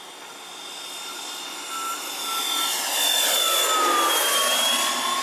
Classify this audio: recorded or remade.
recorded